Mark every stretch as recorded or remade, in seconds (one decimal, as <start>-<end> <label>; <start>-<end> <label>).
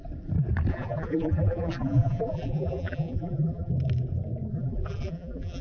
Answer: 0.0-0.7 recorded; 0.7-3.7 remade; 3.7-4.5 recorded; 4.5-5.6 remade